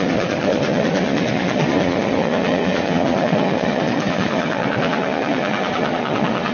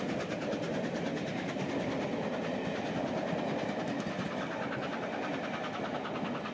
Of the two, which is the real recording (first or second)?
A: second